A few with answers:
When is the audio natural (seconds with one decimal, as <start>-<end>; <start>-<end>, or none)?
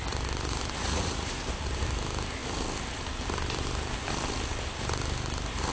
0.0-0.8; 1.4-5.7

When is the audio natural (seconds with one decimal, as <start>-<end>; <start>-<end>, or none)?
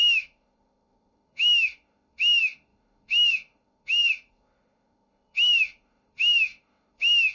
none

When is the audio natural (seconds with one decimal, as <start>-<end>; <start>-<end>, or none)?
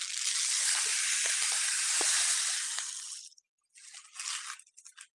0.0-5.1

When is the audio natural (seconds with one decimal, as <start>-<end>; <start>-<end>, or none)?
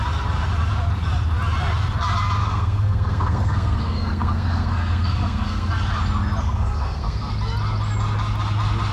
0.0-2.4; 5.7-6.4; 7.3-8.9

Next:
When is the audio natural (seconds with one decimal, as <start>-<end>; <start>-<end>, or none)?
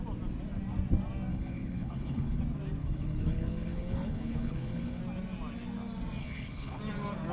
0.0-1.3; 2.4-2.8; 5.0-6.2; 6.8-7.3